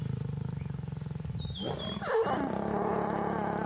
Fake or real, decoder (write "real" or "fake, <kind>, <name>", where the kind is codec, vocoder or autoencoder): fake, vocoder, BigVGAN v2